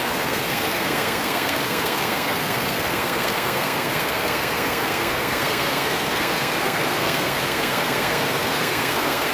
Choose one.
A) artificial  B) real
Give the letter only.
A